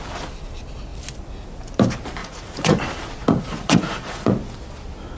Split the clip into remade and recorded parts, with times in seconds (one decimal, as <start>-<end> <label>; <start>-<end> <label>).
0.0-2.2 recorded; 2.2-2.8 remade; 2.8-3.2 recorded; 3.2-4.3 remade; 4.3-5.2 recorded